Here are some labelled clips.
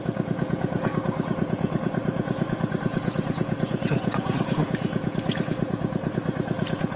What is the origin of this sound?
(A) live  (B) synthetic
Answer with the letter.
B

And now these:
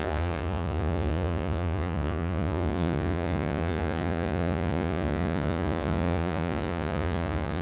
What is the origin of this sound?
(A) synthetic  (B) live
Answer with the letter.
A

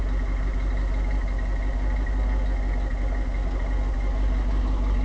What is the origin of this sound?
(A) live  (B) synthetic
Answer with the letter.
A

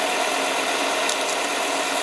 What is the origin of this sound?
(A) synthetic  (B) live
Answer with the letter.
B